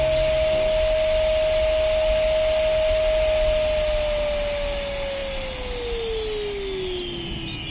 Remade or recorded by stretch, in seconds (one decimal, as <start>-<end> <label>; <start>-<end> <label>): 0.0-7.7 recorded